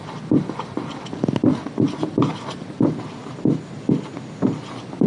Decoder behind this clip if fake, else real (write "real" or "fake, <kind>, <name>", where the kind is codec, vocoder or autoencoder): real